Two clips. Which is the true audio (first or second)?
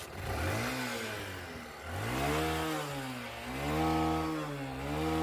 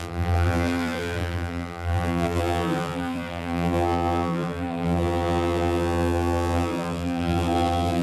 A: first